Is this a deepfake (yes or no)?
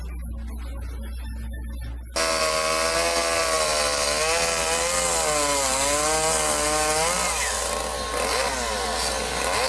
no